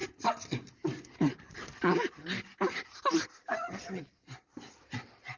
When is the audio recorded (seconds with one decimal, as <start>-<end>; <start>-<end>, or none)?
0.0-3.5; 4.0-5.4